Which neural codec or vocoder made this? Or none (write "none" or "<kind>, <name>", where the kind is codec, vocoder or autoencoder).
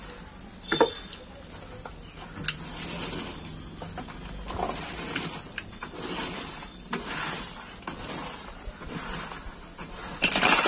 none